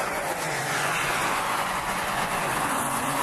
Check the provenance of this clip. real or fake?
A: fake